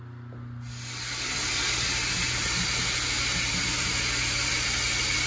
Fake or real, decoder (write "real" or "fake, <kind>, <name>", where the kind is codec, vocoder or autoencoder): real